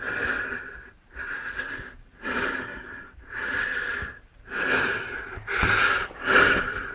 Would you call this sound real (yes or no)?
no